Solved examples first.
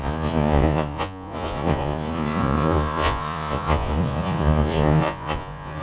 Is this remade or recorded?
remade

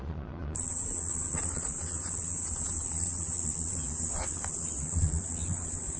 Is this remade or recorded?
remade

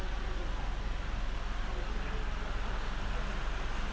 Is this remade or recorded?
recorded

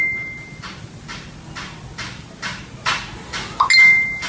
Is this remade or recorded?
recorded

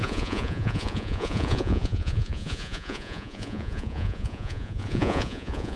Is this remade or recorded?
remade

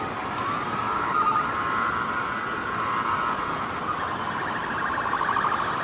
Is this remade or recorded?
recorded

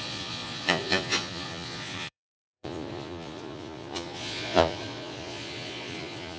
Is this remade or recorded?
remade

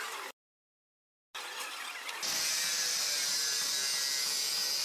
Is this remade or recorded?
recorded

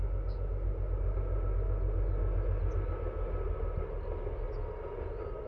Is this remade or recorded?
recorded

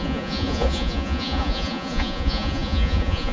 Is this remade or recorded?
remade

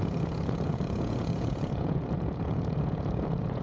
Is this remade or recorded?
remade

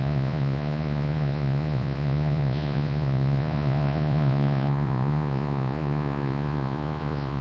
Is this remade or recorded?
remade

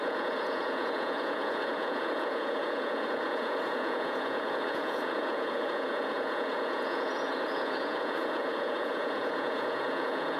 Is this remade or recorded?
remade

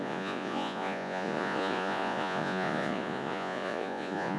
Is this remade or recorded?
remade